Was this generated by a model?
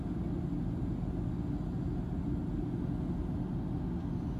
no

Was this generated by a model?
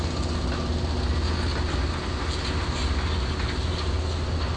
no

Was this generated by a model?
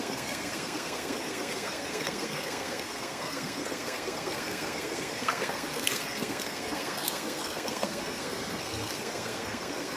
yes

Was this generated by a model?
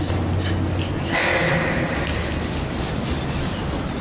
no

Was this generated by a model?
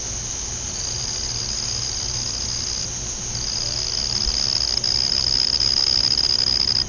no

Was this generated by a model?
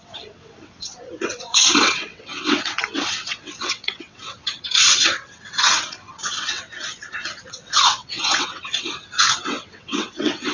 yes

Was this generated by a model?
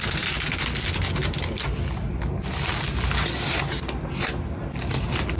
no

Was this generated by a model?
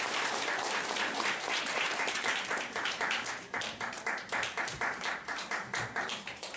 yes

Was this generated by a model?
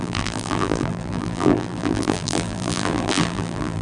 yes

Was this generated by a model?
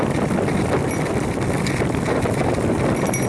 yes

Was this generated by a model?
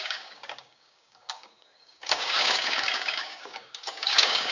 yes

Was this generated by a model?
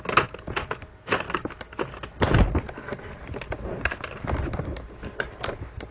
no